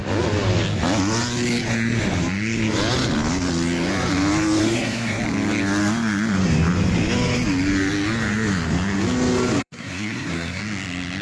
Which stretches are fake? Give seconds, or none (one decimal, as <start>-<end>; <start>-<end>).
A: 4.6-5.2; 9.6-10.6